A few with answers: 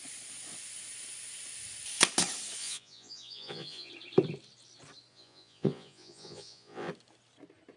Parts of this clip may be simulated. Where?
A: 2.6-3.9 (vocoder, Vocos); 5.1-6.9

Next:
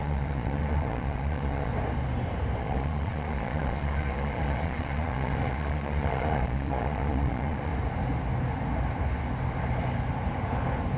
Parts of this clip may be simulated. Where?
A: 0.0-1.7 (vocoder, Vocos); 2.6-7.7